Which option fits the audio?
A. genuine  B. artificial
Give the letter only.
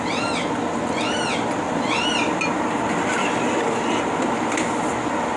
B